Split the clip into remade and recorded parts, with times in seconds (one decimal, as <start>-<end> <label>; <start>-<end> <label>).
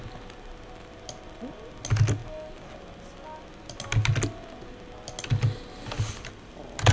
0.0-6.9 recorded